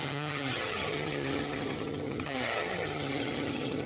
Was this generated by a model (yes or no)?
yes